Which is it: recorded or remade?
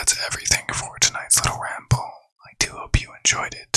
recorded